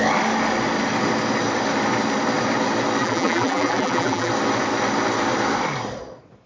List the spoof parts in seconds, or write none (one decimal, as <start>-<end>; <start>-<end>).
3.0-4.3